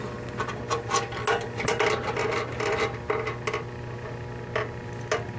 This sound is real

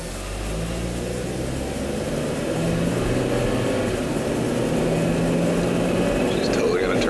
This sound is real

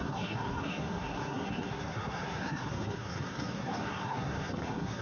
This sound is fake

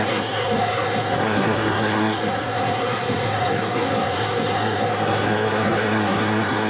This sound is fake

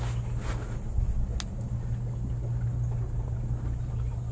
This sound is real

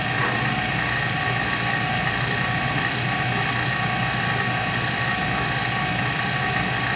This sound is real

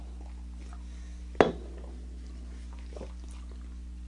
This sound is real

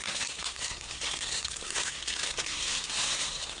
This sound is fake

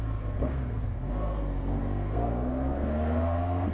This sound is fake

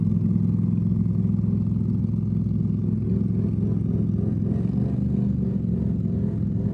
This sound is real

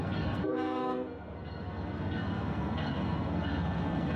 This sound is fake